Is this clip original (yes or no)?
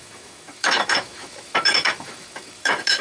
no